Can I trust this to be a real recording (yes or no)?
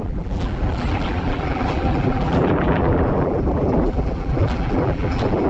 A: no